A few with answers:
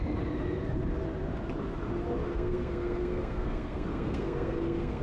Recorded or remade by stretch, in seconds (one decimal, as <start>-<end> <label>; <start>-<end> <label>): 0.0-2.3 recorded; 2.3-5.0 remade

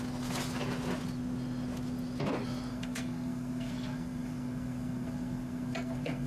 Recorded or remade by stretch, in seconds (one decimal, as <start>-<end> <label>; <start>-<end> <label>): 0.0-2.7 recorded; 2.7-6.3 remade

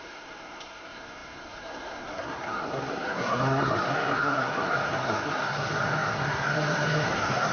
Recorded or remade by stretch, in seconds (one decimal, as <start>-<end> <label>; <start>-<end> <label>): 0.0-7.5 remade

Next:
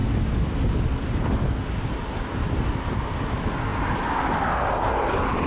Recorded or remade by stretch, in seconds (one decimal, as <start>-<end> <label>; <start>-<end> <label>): 0.0-5.5 recorded